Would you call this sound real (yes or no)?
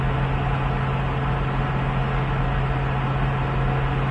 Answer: yes